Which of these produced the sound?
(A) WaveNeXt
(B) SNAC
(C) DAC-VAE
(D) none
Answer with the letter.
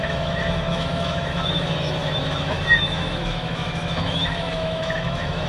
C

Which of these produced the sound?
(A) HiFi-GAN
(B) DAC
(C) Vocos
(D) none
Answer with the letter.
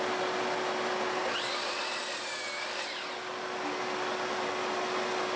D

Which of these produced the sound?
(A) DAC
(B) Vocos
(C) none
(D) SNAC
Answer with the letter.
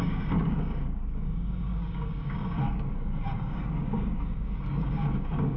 A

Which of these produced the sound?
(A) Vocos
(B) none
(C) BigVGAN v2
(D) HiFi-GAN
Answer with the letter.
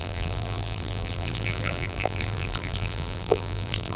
C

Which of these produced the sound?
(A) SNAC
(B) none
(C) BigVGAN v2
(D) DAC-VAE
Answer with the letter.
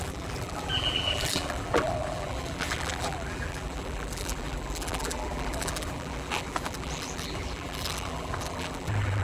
C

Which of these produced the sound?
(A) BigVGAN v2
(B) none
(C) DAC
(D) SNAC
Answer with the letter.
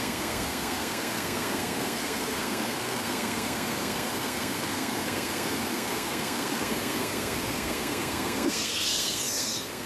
D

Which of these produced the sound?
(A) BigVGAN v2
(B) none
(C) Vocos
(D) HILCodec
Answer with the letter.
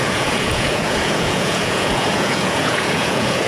C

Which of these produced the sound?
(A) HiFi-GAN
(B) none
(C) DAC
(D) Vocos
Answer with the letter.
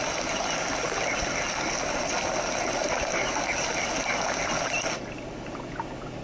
B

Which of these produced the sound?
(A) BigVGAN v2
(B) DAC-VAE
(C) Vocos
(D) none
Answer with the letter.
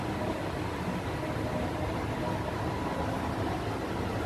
D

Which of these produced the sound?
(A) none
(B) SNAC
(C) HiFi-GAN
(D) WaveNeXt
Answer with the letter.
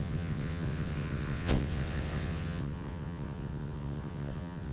D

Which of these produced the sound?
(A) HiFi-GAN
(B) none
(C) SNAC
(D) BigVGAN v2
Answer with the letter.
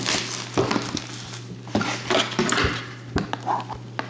B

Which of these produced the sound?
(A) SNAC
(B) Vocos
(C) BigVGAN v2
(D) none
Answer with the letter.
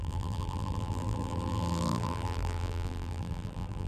C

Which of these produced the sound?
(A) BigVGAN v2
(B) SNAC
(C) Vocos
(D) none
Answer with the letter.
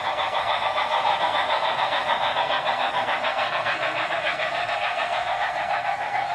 B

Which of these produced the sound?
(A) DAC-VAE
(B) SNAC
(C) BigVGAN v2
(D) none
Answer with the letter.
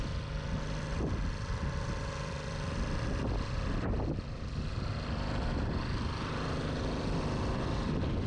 C